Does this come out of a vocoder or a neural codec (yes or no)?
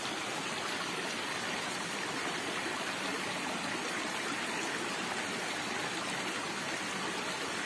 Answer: no